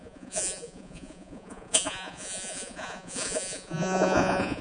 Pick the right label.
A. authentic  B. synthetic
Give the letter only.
B